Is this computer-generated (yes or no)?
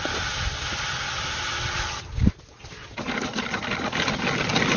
no